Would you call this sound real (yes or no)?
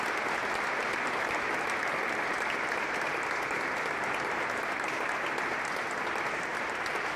yes